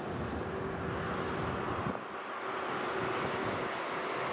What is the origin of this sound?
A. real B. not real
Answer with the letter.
A